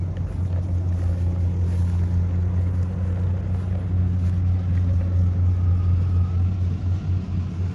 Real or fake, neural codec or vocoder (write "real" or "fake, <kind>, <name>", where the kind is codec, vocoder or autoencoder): real